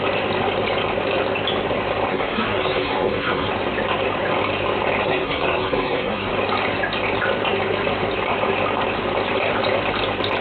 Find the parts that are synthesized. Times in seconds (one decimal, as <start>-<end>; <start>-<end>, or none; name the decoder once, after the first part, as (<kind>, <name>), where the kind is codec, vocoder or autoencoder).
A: 2.1-3.5 (codec, SNAC); 5.0-6.3